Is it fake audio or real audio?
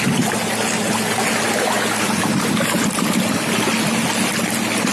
real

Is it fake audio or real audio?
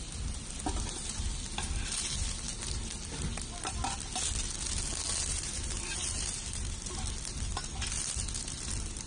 real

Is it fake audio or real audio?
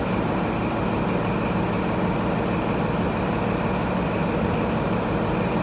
real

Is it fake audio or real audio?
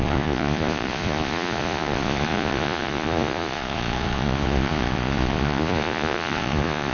fake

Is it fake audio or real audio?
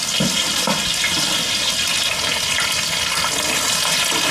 real